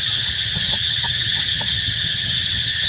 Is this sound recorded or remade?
remade